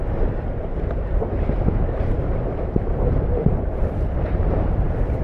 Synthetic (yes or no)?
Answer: yes